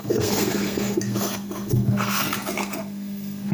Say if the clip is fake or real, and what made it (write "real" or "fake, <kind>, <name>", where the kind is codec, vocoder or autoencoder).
fake, codec, SNAC